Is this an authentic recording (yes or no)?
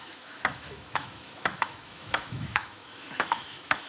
no